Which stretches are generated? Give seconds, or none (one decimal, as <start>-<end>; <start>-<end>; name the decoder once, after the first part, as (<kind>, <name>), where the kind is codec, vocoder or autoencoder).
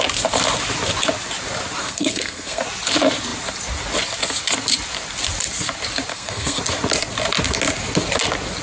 1.8-2.6 (codec, SNAC); 6.1-6.6